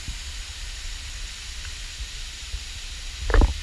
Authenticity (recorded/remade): recorded